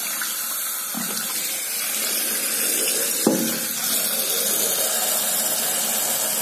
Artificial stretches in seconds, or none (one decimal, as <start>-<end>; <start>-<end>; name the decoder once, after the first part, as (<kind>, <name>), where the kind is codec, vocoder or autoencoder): none